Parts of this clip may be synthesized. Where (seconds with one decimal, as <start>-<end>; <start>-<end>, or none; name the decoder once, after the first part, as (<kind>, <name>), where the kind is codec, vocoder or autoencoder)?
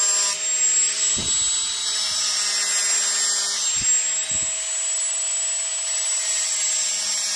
none